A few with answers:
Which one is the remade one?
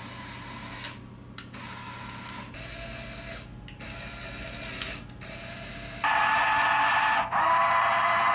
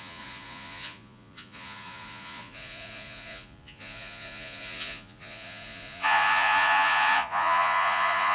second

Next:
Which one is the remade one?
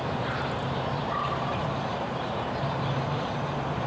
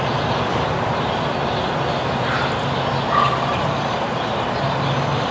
first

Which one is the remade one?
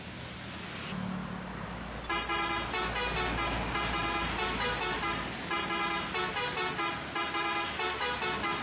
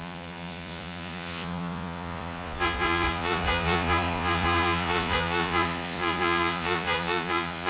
second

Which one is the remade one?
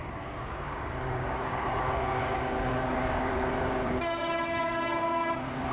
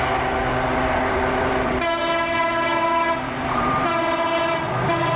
first